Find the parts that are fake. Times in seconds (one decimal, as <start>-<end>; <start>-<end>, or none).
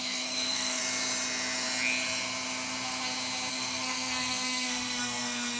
0.0-0.8; 3.5-5.6